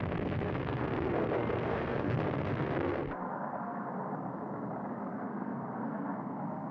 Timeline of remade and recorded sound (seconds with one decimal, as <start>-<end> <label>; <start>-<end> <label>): 0.0-4.3 remade; 4.3-4.9 recorded; 4.9-6.7 remade